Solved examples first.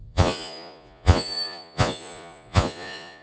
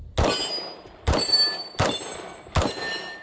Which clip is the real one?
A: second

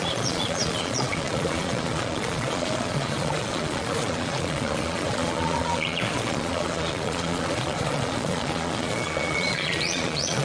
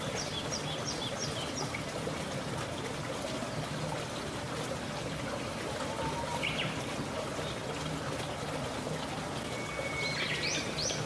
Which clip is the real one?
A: second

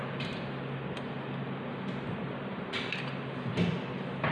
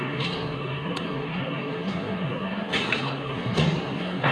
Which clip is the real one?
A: first